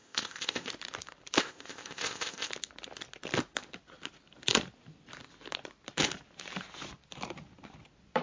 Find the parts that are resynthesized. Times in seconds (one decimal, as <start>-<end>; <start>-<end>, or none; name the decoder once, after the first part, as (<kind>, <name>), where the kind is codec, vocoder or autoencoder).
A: 0.0-0.7 (codec, ZipCodec); 1.4-2.5